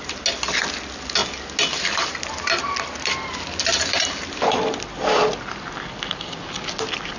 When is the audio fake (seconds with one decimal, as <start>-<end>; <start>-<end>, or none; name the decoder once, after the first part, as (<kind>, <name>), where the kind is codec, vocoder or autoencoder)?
none